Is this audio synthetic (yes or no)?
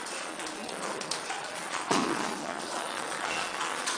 yes